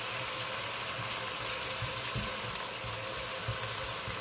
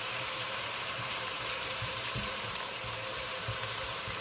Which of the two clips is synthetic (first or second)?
second